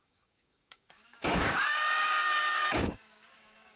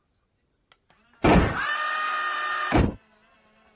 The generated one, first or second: first